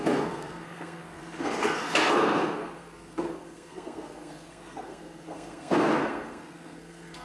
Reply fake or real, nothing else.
fake